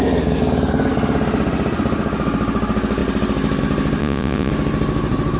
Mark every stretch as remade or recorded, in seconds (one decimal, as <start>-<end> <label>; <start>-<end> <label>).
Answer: 0.0-4.0 recorded; 4.0-4.5 remade; 4.5-5.4 recorded